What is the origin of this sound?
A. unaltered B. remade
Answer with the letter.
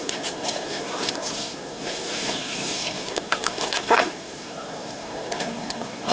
B